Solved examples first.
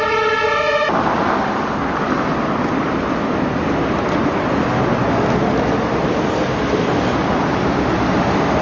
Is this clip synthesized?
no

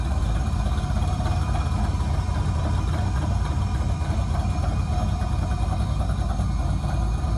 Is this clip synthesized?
no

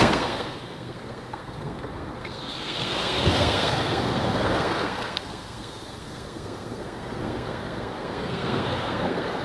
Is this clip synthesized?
yes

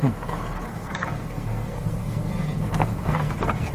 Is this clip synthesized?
yes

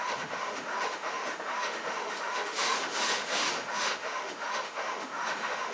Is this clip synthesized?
yes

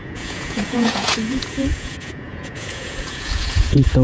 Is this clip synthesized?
yes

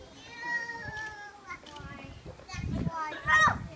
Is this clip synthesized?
no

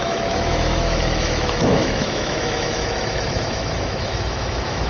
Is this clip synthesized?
yes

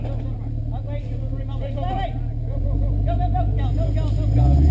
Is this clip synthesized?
no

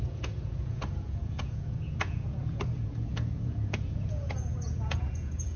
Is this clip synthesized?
yes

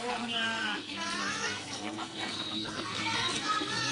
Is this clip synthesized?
yes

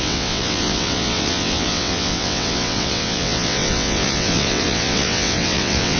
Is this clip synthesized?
yes